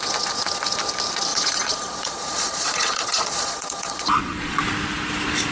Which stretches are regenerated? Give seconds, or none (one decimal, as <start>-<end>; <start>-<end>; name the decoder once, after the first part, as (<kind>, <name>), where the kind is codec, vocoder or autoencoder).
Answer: 1.3-4.6 (vocoder, Vocos)